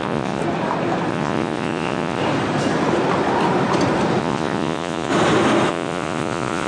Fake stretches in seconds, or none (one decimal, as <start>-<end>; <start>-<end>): 0.0-0.4; 1.1-2.2; 4.2-5.1; 5.7-6.7